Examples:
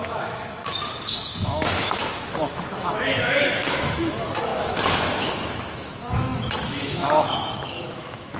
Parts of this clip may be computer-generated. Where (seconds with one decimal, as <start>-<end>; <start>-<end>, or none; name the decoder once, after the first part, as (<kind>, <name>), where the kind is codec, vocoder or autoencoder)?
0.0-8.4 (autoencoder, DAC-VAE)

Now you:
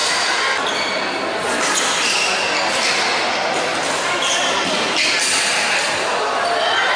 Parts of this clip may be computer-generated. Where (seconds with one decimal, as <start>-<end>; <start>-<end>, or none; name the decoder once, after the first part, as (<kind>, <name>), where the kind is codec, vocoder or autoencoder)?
none

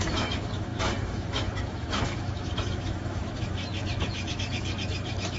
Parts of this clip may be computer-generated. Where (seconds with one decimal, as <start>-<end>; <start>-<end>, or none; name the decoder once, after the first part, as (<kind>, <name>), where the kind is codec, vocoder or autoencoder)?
0.0-5.4 (autoencoder, DAC-VAE)